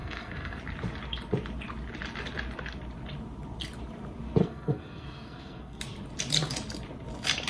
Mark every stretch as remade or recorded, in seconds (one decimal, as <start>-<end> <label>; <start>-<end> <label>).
0.0-0.6 remade; 0.6-4.4 recorded; 4.4-5.8 remade; 5.8-7.5 recorded